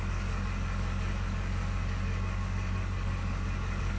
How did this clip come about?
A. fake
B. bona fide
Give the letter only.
A